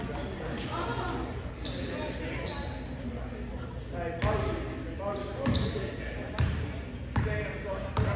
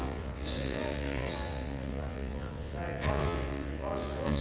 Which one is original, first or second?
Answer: first